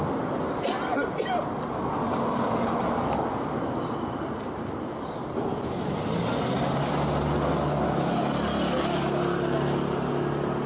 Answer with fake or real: real